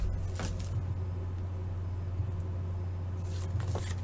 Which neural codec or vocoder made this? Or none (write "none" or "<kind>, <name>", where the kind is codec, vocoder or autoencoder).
none